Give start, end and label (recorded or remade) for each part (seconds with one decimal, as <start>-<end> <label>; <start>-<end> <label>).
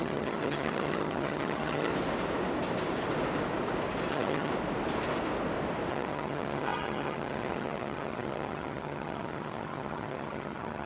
0.0-1.9 remade; 1.9-4.1 recorded; 4.1-4.5 remade; 4.5-5.9 recorded; 5.9-10.9 remade